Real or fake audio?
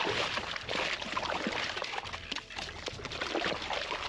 real